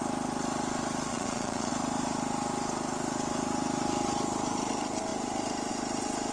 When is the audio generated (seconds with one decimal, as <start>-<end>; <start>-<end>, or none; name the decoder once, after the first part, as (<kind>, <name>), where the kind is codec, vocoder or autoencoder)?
1.1-1.7 (vocoder, Vocos)